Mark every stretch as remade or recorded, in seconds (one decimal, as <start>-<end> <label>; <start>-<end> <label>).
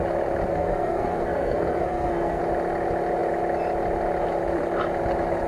0.0-0.5 recorded; 0.5-2.4 remade; 2.4-5.5 recorded